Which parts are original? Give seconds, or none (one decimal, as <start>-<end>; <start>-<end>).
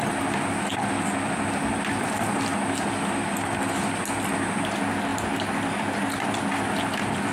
0.0-7.3